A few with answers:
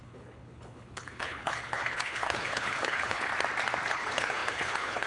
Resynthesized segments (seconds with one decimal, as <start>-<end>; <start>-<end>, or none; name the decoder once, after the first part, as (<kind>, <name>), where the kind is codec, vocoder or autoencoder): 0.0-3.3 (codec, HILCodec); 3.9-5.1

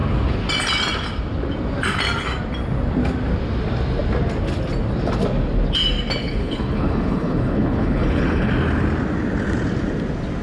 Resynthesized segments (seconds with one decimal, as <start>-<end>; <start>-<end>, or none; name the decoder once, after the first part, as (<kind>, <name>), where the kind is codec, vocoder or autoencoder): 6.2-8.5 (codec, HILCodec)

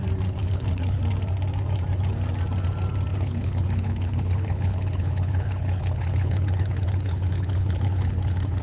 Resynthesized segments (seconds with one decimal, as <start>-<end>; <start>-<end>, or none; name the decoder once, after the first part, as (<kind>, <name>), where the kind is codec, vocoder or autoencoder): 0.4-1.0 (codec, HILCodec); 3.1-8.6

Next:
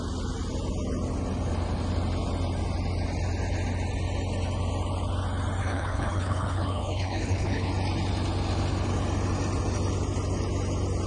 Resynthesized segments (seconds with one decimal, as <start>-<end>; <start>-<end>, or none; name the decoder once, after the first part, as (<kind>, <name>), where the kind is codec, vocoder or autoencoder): 5.6-7.7 (codec, HILCodec)

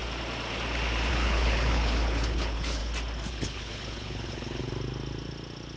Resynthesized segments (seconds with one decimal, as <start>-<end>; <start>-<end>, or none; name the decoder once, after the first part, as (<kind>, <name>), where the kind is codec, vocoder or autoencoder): 1.1-2.8 (codec, HILCodec); 3.3-4.7